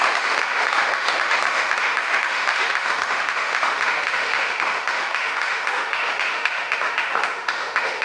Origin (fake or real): fake